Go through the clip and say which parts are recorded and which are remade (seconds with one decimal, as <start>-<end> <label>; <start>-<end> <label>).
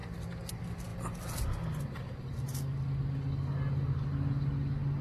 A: 0.0-5.0 recorded